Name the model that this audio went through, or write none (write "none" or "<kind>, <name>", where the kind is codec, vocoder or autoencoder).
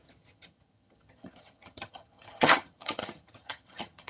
vocoder, HiFi-GAN